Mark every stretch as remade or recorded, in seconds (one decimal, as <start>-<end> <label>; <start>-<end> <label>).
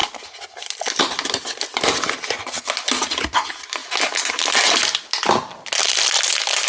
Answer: 0.0-6.7 recorded